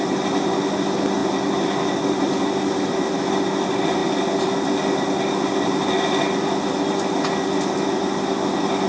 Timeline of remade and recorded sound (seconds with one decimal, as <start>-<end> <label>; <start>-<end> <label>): 0.0-8.9 recorded